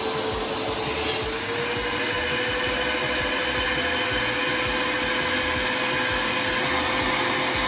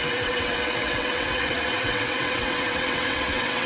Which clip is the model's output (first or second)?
second